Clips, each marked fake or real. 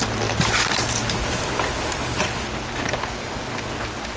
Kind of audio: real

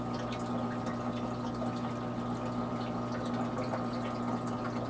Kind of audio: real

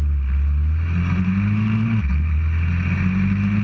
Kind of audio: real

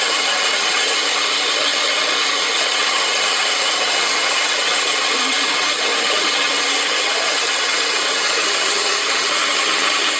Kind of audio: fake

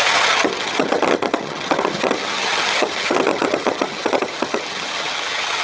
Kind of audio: fake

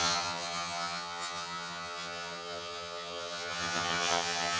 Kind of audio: fake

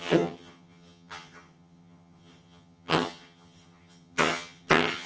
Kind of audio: fake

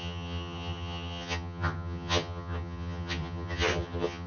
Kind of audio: fake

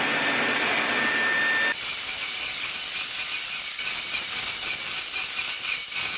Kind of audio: real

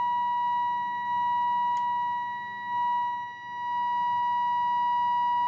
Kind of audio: real